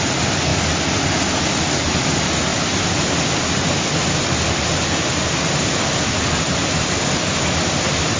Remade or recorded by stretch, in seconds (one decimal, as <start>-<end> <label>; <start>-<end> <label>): 0.0-8.2 recorded